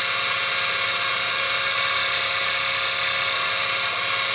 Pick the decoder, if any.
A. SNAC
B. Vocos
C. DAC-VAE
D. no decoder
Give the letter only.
D